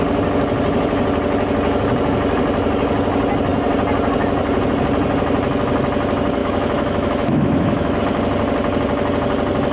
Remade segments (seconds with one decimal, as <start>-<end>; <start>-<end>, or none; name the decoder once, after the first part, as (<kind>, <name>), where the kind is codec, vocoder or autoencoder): 6.4-8.0 (autoencoder, DAC-VAE)